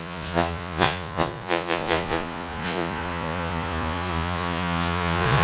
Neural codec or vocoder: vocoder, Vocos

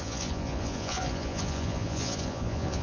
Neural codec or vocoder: vocoder, Vocos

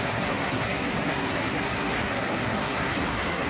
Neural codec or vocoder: codec, SNAC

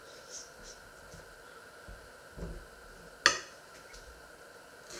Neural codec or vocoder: none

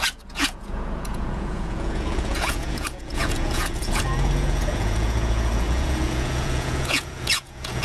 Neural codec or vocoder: vocoder, Vocos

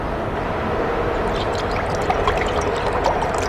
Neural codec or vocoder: none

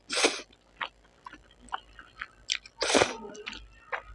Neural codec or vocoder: none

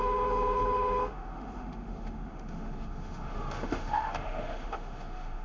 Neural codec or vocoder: autoencoder, DAC-VAE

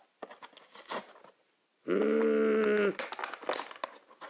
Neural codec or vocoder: none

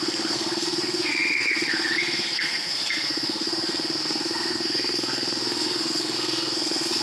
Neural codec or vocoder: codec, SNAC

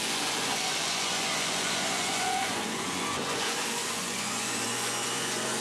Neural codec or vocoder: vocoder, Vocos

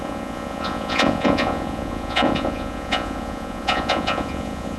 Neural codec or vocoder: vocoder, Vocos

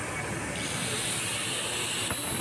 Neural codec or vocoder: none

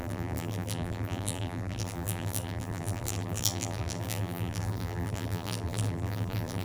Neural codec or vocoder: vocoder, BigVGAN v2